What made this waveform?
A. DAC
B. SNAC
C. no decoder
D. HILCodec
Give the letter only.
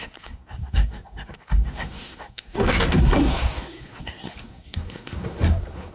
B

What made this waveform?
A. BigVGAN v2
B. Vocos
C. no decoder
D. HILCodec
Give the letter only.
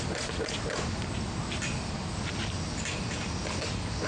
C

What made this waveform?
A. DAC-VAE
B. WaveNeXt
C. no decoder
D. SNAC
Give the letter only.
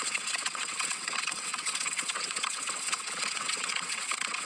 B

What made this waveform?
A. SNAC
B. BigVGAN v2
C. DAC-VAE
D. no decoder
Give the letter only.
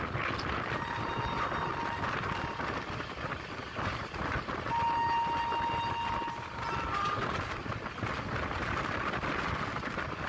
D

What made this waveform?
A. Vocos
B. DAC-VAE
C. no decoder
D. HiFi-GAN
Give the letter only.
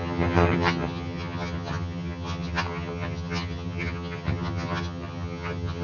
D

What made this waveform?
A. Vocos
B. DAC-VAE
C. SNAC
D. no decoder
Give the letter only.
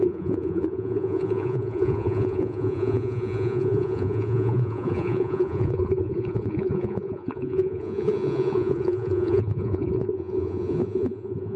A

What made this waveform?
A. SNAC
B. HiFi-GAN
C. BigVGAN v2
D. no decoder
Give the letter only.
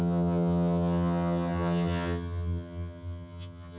B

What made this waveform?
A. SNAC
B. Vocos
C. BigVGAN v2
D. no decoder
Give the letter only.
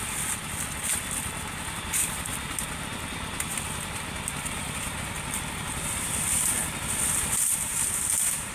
D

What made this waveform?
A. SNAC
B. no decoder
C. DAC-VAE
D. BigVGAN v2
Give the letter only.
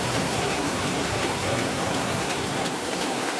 A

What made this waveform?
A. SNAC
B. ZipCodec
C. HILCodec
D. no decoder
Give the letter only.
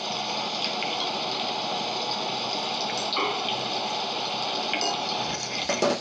D